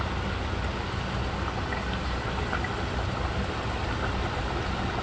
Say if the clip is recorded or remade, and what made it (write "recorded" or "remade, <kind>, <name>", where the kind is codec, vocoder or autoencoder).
recorded